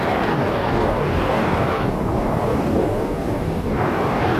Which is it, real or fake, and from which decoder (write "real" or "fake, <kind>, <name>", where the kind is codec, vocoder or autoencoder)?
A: fake, codec, DAC